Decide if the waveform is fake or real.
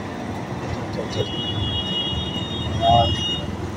real